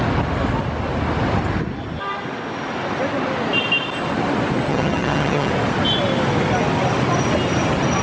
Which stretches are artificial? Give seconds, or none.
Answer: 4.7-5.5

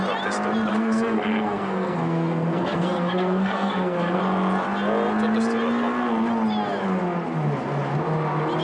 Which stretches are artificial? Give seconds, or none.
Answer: 0.7-4.2

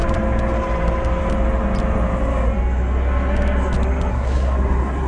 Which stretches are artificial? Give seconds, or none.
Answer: 4.1-5.1